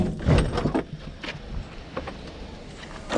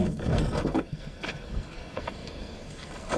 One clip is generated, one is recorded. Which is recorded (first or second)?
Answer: first